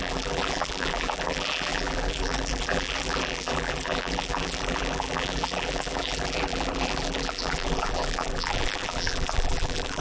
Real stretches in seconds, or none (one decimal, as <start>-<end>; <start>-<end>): none